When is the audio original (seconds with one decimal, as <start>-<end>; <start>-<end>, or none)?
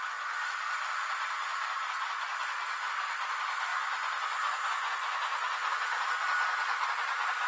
0.0-3.7; 6.0-7.5